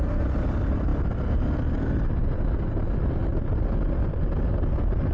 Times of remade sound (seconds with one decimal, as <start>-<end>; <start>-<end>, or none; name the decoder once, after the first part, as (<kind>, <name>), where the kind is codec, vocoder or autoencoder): none